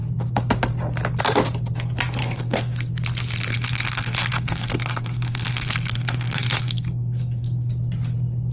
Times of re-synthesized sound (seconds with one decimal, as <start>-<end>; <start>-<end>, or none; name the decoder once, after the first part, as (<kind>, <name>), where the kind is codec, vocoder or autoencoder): 2.2-2.9 (codec, SNAC); 3.5-7.7